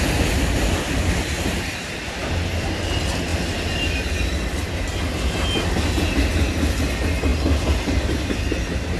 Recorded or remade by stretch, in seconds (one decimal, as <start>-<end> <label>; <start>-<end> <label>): 0.0-9.0 recorded